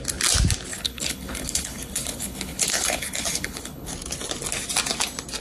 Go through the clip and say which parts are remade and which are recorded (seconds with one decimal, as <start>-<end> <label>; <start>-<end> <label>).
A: 0.0-0.7 recorded; 0.7-3.9 remade; 3.9-5.4 recorded